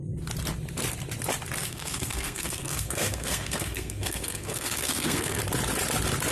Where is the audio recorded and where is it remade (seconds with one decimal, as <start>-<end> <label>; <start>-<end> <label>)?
0.0-1.6 recorded; 1.6-5.4 remade; 5.4-6.3 recorded